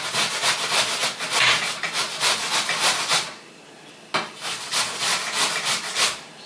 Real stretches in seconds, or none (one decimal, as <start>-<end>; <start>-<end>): 0.0-6.5